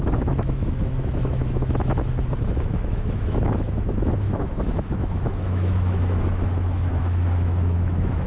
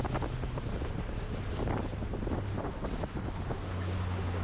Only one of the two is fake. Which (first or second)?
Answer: first